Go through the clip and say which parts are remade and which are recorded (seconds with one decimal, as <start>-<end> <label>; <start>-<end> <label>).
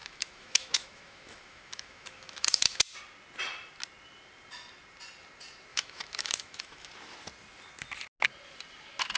0.0-2.8 remade; 2.8-5.7 recorded; 5.7-6.9 remade; 6.9-9.2 recorded